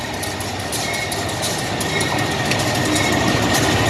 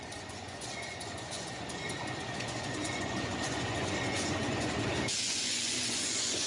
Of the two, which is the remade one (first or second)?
second